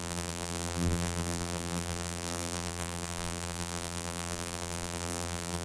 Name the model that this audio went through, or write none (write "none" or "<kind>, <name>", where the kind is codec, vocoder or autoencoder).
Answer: vocoder, BigVGAN v2